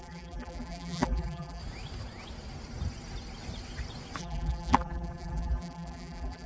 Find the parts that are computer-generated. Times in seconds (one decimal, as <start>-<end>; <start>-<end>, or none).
0.0-1.6; 4.2-6.5